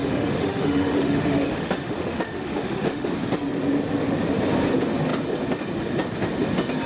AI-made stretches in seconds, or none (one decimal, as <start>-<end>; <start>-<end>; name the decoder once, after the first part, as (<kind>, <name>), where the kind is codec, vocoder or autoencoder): 0.0-3.1 (autoencoder, DAC-VAE)